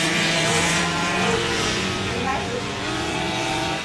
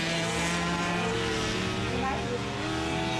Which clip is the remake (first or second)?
first